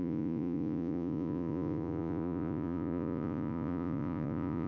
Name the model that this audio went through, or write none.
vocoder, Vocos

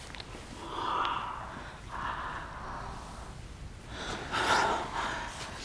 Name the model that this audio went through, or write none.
none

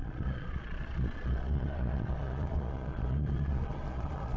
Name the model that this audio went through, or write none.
vocoder, Vocos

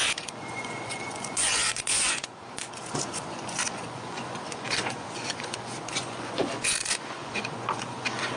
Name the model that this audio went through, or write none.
vocoder, Vocos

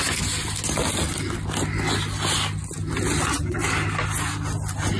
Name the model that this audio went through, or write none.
none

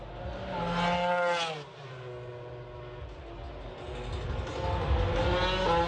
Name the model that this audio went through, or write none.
none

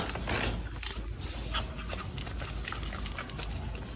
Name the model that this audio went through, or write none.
none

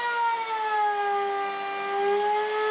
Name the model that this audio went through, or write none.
none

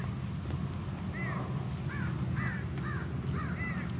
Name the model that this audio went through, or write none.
none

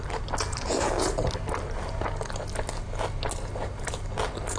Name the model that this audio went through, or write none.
none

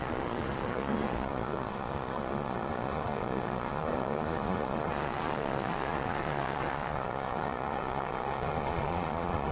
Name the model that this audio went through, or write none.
vocoder, Vocos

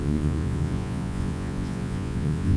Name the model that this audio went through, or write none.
vocoder, Vocos